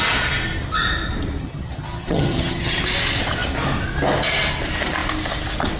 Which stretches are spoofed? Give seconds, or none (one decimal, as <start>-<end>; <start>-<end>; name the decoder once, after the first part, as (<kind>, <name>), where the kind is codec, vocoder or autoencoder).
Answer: 1.4-2.8 (vocoder, HiFi-GAN)